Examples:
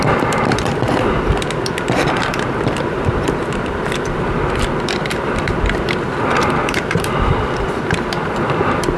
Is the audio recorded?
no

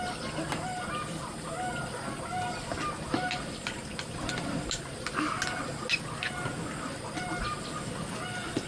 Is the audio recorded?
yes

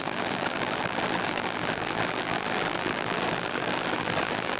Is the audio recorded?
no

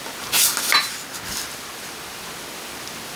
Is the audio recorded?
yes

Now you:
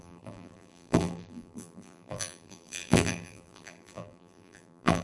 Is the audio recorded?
no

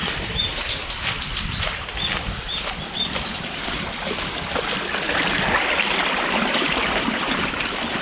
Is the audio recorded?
no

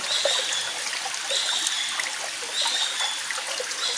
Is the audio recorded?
yes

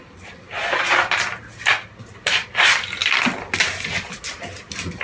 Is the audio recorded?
yes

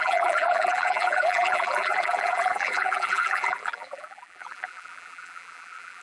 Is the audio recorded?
no